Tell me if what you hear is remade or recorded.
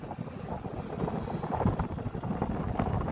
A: recorded